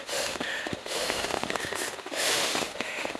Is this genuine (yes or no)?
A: no